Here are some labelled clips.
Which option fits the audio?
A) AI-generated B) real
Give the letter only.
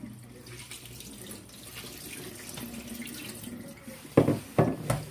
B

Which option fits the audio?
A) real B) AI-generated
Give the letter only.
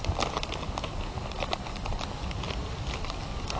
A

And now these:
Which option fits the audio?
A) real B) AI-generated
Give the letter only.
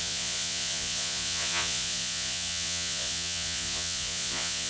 B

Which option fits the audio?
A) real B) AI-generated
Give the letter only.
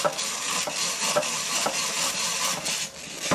A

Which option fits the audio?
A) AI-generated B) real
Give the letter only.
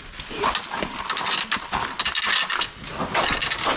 B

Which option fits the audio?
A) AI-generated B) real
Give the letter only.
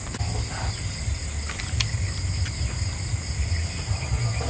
B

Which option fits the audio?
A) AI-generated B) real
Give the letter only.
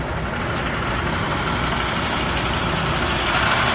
B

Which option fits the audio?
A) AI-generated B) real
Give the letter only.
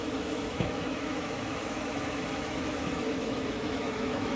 A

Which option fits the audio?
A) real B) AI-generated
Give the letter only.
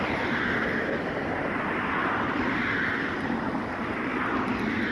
A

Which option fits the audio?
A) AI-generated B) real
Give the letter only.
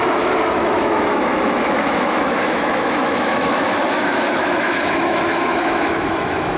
A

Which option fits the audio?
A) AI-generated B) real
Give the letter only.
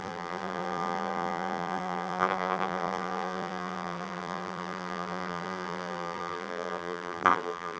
A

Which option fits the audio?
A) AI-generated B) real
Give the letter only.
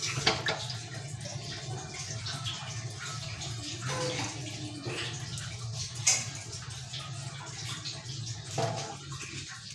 B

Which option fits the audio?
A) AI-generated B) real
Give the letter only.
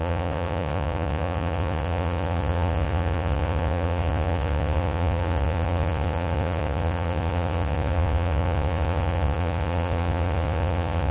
A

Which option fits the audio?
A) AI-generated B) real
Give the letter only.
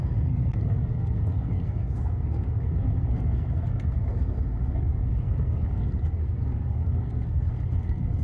A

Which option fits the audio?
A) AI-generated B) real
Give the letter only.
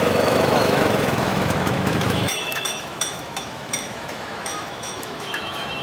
A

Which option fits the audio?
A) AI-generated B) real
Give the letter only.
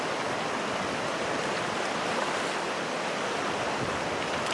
A